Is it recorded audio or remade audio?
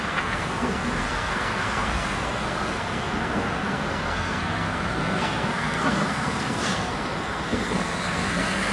remade